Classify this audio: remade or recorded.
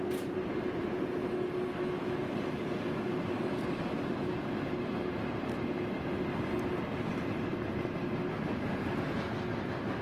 recorded